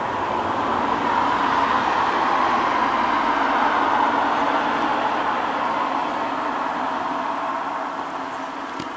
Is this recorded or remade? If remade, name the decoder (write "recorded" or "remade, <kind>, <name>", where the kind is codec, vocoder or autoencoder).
recorded